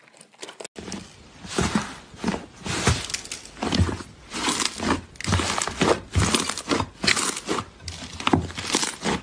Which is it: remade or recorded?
recorded